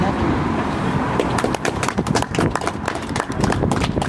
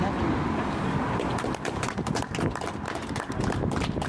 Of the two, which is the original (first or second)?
second